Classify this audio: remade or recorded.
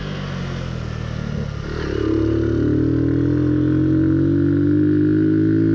recorded